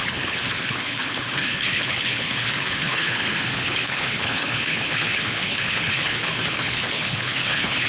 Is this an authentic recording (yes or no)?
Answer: no